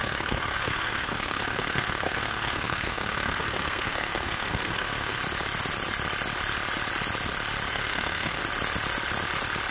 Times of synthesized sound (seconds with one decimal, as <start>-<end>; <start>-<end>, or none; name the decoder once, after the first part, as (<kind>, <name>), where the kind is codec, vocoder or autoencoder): 0.0-5.2 (codec, SNAC); 7.7-8.4